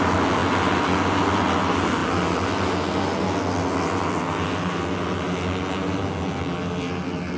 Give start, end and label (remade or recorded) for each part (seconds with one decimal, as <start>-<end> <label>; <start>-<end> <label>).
0.0-7.4 recorded

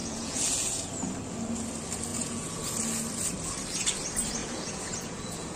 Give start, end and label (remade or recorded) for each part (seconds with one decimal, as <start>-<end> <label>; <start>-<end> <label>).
0.0-0.9 remade; 0.9-2.1 recorded; 2.1-2.8 remade; 2.8-4.4 recorded; 4.4-5.6 remade

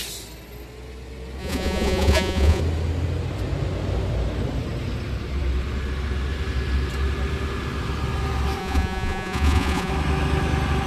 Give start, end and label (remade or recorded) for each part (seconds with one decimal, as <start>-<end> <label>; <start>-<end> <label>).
0.0-1.4 recorded; 1.4-2.6 remade; 2.6-8.6 recorded; 8.6-9.9 remade; 9.9-10.9 recorded

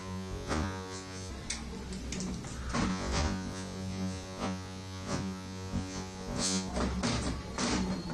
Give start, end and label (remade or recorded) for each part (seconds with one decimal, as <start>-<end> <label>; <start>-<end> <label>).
0.0-1.3 remade; 1.3-2.9 recorded; 2.9-6.7 remade; 6.7-8.1 recorded

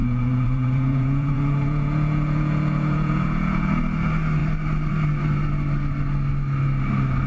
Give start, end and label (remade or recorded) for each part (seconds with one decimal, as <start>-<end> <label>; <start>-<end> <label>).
0.0-3.7 remade; 3.7-7.3 recorded